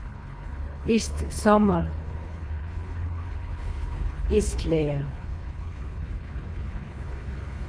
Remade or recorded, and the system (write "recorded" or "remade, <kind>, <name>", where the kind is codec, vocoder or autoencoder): remade, codec, HILCodec